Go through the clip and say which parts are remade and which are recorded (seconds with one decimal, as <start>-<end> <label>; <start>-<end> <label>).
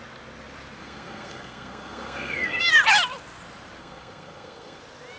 0.0-0.8 recorded; 0.8-2.6 remade; 2.6-3.8 recorded; 3.8-4.8 remade; 4.8-5.2 recorded